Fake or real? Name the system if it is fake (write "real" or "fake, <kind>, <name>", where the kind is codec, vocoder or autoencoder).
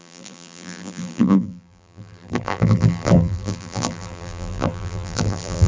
fake, vocoder, BigVGAN v2